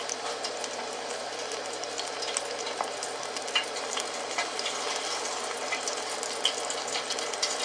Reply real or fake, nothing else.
real